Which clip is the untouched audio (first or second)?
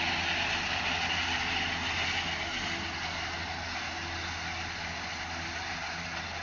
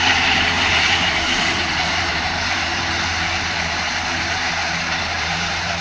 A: first